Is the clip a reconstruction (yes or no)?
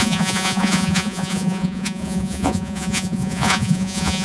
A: yes